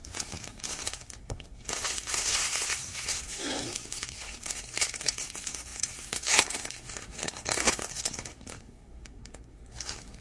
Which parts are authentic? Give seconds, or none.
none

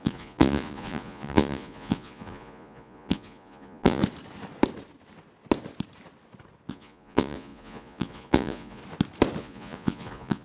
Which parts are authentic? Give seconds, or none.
4.0-6.7; 8.8-9.4